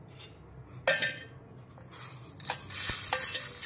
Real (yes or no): yes